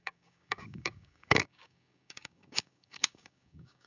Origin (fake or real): fake